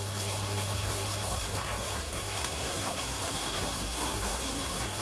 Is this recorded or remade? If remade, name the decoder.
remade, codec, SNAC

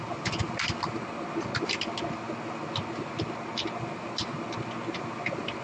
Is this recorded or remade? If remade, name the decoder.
recorded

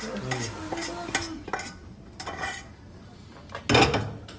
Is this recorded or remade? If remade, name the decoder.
recorded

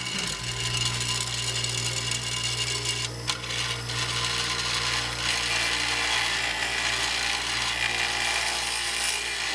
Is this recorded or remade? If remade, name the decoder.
recorded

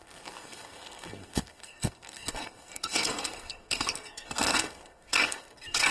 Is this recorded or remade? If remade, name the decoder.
remade, codec, SNAC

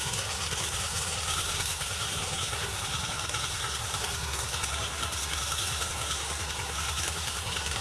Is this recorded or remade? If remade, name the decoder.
remade, codec, SNAC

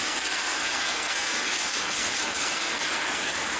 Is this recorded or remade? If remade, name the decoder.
remade, codec, SNAC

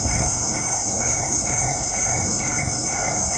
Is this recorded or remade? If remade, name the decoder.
remade, codec, SNAC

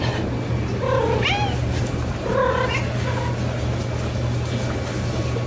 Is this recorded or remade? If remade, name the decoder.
recorded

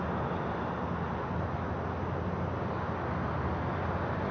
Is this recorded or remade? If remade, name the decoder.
recorded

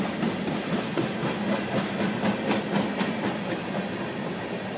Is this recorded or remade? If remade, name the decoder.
recorded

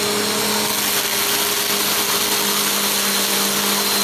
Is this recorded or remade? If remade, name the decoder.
recorded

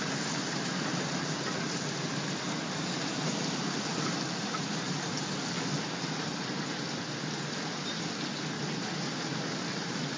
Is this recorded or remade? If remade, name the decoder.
recorded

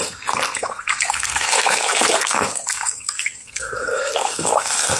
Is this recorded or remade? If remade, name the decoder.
remade, codec, SNAC